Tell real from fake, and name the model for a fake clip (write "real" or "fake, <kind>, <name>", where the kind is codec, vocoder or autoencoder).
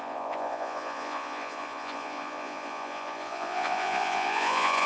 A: fake, vocoder, Vocos